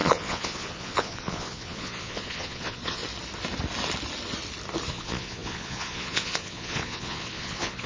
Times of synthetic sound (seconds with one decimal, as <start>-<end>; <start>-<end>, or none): 0.0-3.0; 4.9-7.9